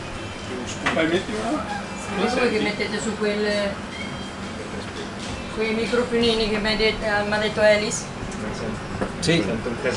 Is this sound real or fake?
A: real